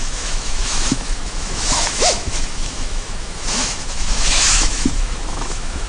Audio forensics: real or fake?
fake